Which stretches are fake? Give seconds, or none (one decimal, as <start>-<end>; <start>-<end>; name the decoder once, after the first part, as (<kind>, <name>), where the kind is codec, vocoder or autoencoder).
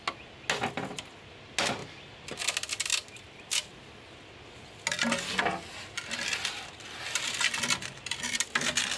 none